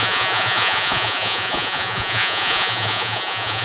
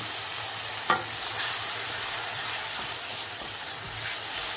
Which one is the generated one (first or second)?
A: first